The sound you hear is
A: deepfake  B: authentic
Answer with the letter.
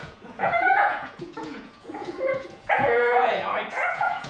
A